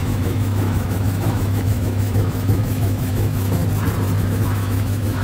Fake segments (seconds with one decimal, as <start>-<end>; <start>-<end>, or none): 0.0-3.6; 4.2-5.2